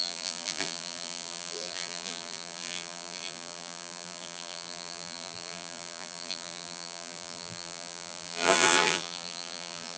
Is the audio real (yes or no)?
no